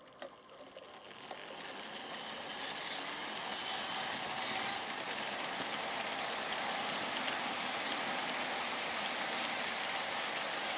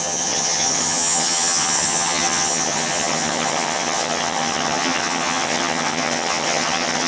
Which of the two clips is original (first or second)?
first